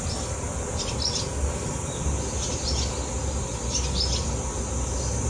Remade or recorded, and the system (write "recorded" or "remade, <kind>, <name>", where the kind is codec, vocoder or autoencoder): recorded